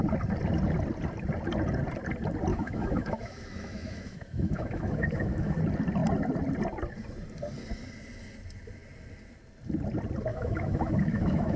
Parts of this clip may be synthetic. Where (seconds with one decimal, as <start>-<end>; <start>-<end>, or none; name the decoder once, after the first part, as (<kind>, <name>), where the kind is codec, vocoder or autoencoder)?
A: 2.5-5.6 (autoencoder, DAC-VAE); 10.3-11.6